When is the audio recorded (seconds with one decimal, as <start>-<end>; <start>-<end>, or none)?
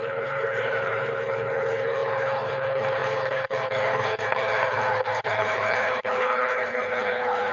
none